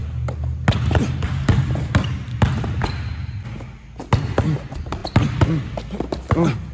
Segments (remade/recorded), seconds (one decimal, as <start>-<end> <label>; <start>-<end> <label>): 0.0-6.7 recorded